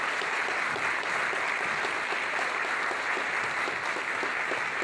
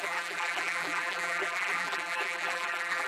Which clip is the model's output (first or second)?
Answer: second